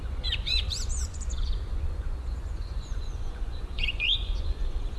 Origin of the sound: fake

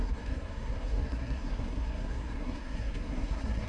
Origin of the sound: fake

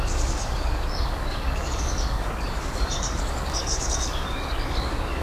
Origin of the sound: fake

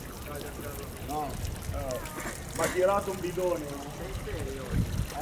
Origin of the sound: real